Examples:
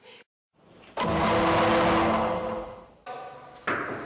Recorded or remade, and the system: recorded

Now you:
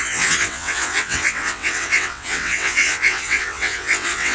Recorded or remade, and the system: remade, vocoder, WaveNeXt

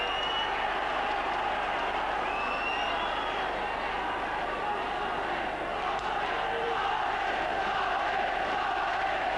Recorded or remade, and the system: recorded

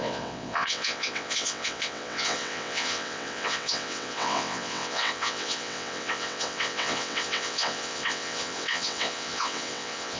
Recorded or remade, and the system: remade, vocoder, WaveNeXt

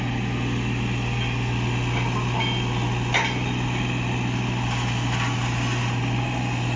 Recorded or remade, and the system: recorded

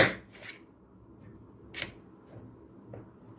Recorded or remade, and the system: recorded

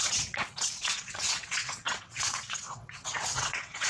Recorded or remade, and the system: remade, vocoder, WaveNeXt